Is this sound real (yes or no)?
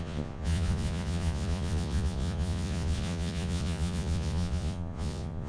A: no